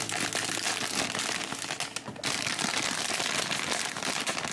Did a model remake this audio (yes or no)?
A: no